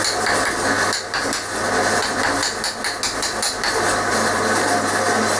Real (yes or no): yes